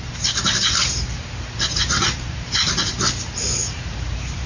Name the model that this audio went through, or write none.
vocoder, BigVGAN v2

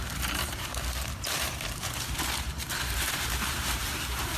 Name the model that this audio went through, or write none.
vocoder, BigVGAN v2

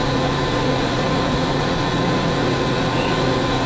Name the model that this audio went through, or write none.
vocoder, Vocos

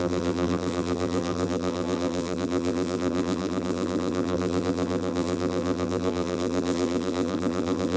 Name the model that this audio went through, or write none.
vocoder, BigVGAN v2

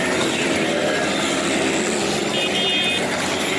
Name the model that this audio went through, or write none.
none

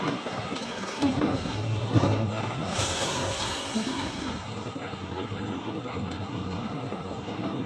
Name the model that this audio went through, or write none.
codec, SNAC